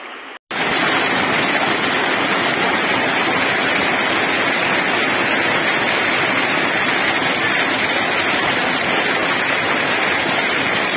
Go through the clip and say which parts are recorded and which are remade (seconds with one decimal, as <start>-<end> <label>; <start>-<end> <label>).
0.0-11.0 recorded